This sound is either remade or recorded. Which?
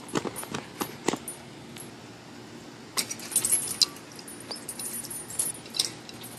recorded